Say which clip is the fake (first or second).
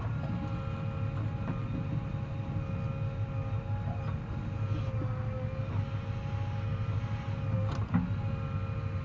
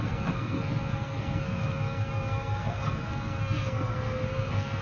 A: second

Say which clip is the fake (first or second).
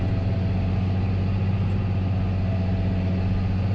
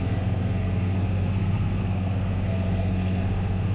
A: second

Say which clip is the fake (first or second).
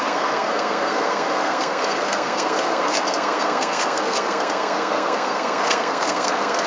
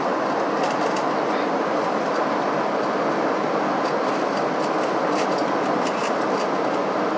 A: first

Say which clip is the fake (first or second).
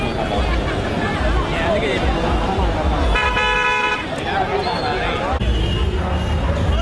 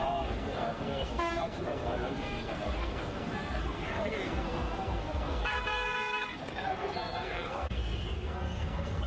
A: second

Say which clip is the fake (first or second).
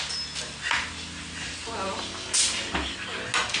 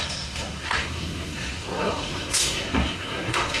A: second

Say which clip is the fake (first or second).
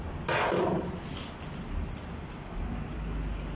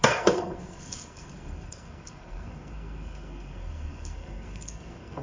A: second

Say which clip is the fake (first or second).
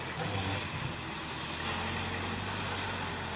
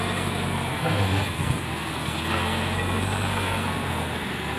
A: second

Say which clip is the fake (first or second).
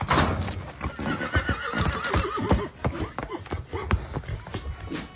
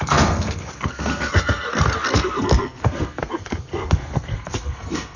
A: second